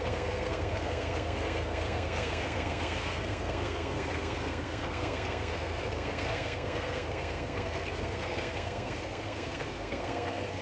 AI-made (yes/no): yes